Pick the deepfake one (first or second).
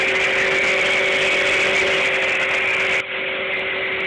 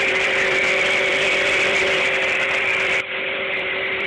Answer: second